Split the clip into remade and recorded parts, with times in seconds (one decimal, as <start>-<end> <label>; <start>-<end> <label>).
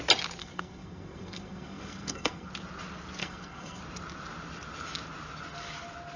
0.0-0.4 recorded; 0.4-2.5 remade; 2.5-3.2 recorded; 3.2-3.8 remade; 3.8-6.2 recorded